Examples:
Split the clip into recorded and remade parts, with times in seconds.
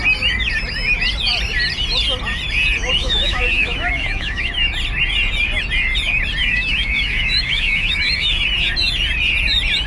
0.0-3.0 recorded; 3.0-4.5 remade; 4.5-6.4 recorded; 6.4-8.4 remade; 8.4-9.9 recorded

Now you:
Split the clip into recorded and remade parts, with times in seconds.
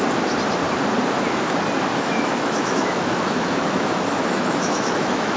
0.0-1.9 recorded; 1.9-5.4 remade